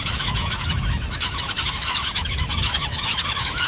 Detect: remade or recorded remade